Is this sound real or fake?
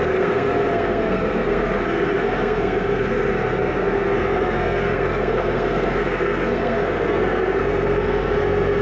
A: fake